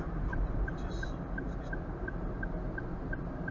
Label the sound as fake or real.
real